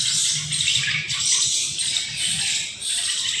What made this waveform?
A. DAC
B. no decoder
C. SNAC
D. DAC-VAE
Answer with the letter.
B